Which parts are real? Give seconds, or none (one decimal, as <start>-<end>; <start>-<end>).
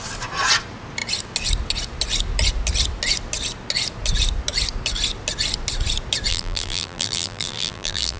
0.0-6.3